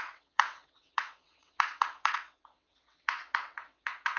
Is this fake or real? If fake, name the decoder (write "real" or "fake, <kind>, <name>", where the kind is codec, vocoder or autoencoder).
fake, vocoder, WaveNeXt